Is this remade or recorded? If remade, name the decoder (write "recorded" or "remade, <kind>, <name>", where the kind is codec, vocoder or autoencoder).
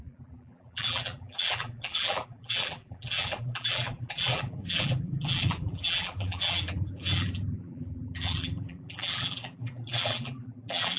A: remade, vocoder, BigVGAN v2